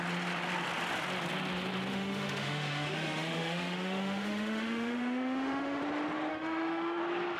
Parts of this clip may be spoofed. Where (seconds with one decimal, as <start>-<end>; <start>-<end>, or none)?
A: 1.9-5.8; 6.3-7.0